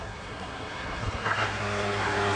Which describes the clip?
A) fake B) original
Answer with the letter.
A